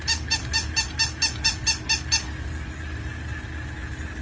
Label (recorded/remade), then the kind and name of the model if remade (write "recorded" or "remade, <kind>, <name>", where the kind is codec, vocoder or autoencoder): recorded